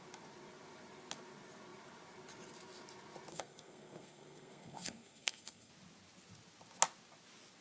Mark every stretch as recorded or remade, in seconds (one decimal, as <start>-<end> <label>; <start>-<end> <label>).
0.0-3.3 recorded; 3.3-5.7 remade; 5.7-7.6 recorded